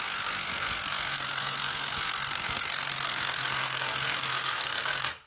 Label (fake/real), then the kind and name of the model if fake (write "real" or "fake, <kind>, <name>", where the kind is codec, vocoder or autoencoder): fake, codec, SNAC